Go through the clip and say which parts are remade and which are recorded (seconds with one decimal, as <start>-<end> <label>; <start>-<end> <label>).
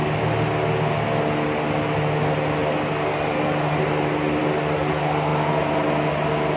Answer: 0.0-6.6 recorded